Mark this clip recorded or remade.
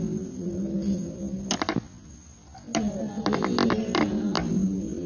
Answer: recorded